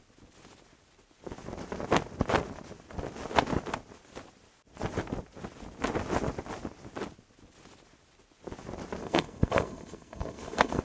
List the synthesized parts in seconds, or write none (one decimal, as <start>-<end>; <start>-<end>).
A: 9.0-10.8

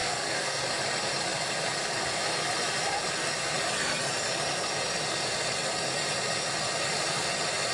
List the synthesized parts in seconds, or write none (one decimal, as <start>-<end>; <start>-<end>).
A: 0.0-0.6

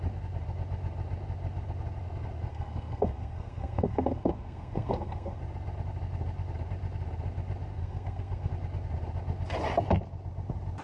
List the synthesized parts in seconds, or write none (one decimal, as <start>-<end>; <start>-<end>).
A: 2.5-5.4; 7.8-8.5

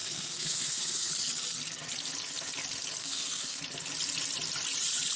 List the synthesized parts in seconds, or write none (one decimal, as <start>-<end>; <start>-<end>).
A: 0.0-1.1; 3.0-3.6

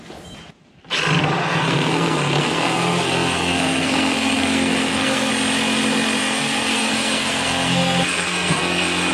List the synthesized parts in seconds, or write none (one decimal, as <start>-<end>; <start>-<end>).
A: 1.4-5.3; 6.2-9.1

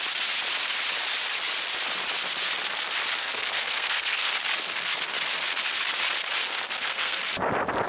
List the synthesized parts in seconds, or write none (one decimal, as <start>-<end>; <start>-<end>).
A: 3.2-4.3; 6.4-7.2

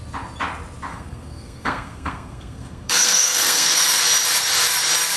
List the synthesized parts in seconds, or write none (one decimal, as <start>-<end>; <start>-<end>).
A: 0.9-4.0

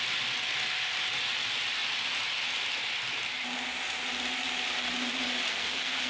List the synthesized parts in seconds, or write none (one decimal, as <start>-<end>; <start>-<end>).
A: 5.5-6.1